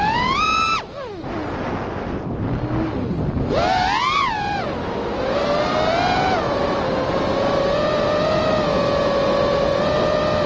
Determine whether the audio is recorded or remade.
recorded